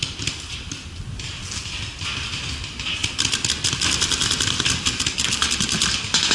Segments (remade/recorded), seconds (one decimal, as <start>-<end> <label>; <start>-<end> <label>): 0.0-6.3 recorded